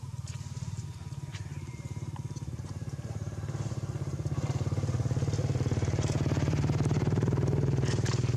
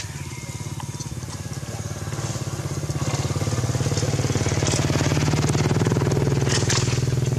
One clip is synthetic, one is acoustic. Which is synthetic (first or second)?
first